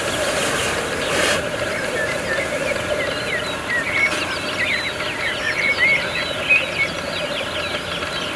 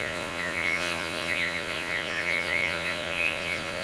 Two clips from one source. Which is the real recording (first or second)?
first